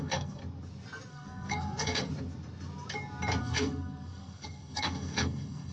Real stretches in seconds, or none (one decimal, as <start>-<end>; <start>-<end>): 0.4-1.1; 2.1-3.4